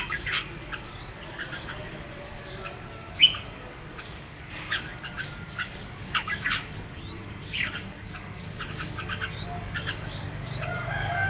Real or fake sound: fake